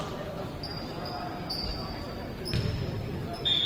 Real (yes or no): yes